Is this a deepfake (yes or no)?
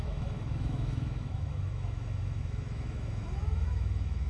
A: yes